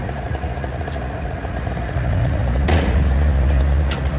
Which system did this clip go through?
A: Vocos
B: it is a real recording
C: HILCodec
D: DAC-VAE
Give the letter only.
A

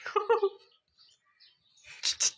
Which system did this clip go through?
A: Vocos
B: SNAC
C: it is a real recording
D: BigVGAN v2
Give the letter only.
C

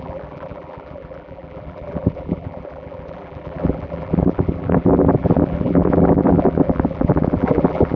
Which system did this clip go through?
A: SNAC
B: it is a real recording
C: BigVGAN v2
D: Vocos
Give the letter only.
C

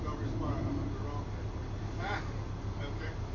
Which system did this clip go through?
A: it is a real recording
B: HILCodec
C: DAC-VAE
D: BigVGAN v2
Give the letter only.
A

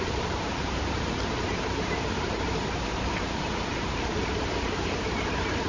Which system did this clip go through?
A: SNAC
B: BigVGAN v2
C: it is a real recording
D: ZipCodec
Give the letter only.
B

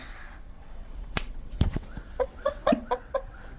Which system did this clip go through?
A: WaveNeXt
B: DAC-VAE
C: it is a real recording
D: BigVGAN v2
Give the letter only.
A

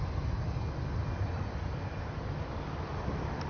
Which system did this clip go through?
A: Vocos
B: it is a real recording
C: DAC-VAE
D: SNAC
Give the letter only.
B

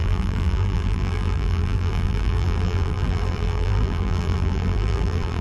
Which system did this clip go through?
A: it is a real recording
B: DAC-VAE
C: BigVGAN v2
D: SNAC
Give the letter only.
C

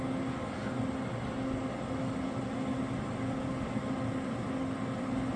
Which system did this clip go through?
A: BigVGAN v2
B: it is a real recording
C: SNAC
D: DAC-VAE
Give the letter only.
B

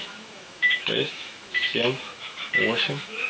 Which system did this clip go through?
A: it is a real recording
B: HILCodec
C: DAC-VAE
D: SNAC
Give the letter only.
C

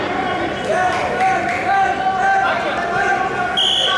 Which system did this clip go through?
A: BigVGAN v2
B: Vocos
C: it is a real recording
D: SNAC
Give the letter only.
C